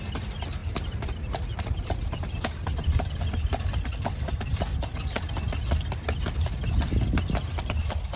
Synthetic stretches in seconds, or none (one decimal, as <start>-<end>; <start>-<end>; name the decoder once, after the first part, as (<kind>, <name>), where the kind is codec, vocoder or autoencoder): 0.6-3.7 (vocoder, BigVGAN v2)